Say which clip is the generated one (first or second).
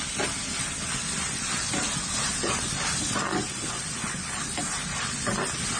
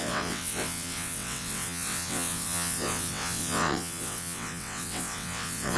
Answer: second